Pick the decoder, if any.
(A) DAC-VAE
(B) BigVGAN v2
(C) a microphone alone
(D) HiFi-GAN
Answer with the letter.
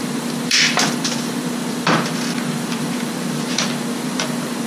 B